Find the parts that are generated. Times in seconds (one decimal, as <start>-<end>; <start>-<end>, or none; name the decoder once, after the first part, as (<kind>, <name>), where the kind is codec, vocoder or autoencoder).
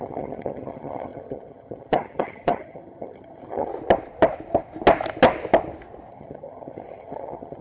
0.0-3.7 (vocoder, HiFi-GAN); 6.1-7.6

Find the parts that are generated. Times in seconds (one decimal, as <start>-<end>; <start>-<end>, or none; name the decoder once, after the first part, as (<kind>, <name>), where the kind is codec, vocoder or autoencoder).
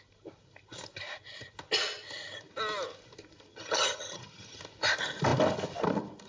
3.5-4.6 (vocoder, HiFi-GAN)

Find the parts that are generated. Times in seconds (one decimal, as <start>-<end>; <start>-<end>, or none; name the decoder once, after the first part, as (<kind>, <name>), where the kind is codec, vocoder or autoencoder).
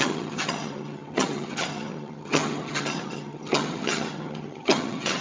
0.0-5.2 (vocoder, HiFi-GAN)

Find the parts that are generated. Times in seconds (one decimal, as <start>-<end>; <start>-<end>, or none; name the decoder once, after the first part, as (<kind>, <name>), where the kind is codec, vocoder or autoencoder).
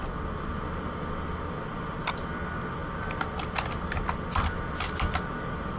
none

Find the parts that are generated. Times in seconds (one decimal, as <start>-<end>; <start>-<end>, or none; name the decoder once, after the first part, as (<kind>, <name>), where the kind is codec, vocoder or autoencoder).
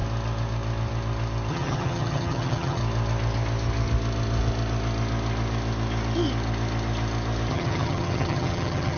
1.5-2.8 (vocoder, HiFi-GAN); 7.5-9.0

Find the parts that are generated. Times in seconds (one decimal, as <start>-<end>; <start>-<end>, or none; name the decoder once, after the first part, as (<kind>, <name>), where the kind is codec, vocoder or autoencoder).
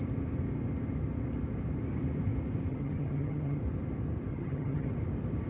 2.7-3.6 (vocoder, HiFi-GAN); 4.3-4.9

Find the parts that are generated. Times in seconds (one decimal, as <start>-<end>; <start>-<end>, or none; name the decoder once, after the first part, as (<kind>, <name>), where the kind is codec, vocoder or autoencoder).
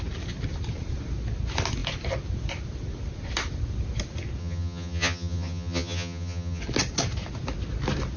4.4-6.6 (vocoder, HiFi-GAN)